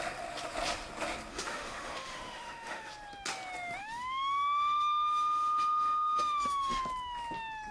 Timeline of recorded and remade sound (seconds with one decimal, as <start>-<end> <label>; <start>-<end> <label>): 0.0-1.3 recorded; 1.3-2.9 remade; 2.9-3.8 recorded; 3.8-6.8 remade; 6.8-7.7 recorded